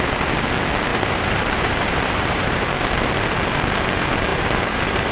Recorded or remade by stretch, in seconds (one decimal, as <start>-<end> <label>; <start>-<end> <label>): 0.0-0.9 recorded; 0.9-2.7 remade; 2.7-4.3 recorded; 4.3-5.1 remade